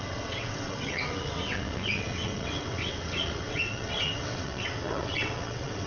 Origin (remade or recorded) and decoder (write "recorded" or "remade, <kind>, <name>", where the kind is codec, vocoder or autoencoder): remade, vocoder, WaveNeXt